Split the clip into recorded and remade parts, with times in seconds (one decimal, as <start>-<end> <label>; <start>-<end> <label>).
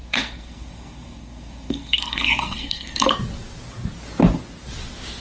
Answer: 0.0-3.1 remade; 3.1-5.2 recorded